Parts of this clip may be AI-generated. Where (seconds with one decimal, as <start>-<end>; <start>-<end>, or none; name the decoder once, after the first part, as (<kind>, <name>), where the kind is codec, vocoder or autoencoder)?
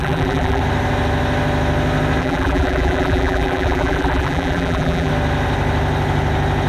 0.0-0.6 (vocoder, BigVGAN v2); 2.2-5.1